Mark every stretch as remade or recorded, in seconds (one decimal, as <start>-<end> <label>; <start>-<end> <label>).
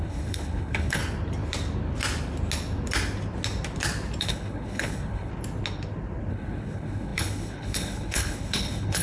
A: 0.0-1.0 remade; 1.0-4.2 recorded; 4.2-5.3 remade; 5.3-6.3 recorded; 6.3-9.0 remade